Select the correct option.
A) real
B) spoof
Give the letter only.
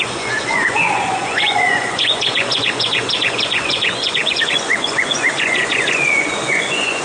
B